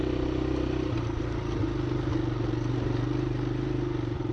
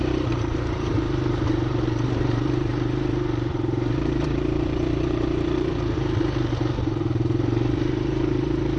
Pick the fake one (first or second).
second